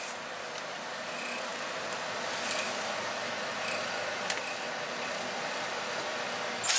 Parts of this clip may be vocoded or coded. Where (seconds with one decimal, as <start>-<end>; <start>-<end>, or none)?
none